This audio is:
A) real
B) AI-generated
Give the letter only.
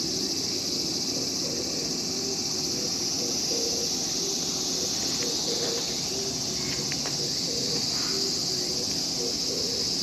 A